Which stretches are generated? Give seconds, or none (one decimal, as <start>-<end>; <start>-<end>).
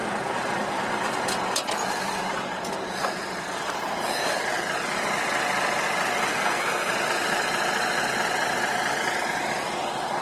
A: 6.3-6.9